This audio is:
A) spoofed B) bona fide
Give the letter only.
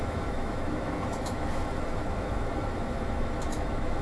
A